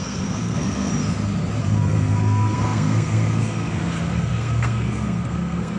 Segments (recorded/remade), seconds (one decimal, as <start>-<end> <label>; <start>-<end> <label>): 0.0-0.9 remade; 0.9-1.6 recorded; 1.6-5.8 remade

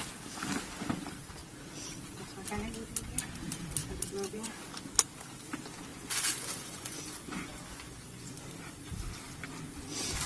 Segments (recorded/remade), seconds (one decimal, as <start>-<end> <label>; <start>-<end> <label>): 0.0-3.8 recorded; 3.8-4.9 remade; 4.9-5.9 recorded; 5.9-8.4 remade; 8.4-10.3 recorded

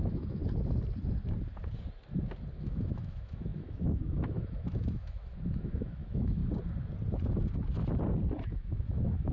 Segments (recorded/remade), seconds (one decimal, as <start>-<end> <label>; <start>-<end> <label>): 0.0-0.4 remade; 0.4-2.5 recorded; 2.5-6.4 remade; 6.4-8.4 recorded; 8.4-9.3 remade

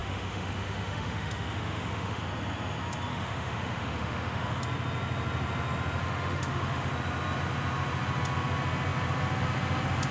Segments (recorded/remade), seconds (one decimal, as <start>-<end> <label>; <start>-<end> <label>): 0.0-2.2 remade; 2.2-3.1 recorded; 3.1-4.6 remade; 4.6-6.0 recorded; 6.0-6.9 remade; 6.9-10.1 recorded